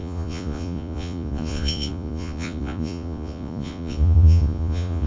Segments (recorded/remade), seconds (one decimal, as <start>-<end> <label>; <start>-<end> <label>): 0.0-5.1 remade